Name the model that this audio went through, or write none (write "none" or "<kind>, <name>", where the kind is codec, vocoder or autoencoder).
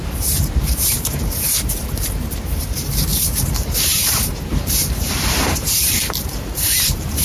vocoder, BigVGAN v2